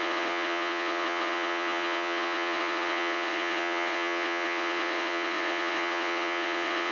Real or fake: fake